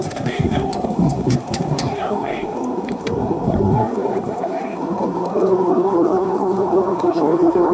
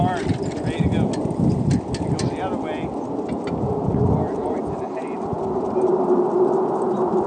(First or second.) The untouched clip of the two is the second